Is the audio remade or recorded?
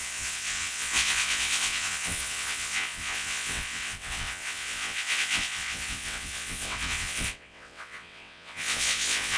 remade